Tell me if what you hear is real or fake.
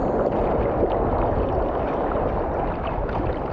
real